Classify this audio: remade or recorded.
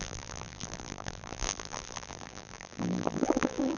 remade